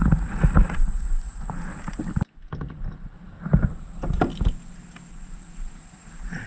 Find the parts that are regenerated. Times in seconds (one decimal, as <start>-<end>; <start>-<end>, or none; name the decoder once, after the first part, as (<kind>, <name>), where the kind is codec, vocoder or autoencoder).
0.0-1.7 (vocoder, Vocos); 5.1-6.5